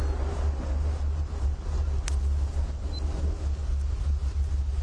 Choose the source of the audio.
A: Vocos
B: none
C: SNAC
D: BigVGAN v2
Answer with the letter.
B